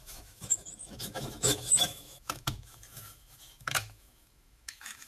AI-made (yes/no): yes